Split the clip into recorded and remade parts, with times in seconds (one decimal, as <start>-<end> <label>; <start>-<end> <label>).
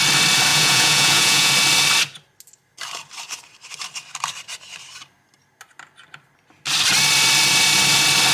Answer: 0.0-0.5 recorded; 0.5-1.5 remade; 1.5-8.3 recorded